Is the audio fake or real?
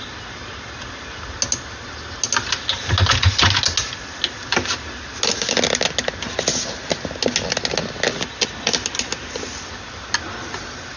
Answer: real